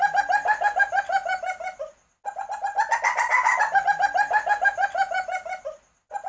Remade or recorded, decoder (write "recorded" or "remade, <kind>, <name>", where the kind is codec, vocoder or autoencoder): recorded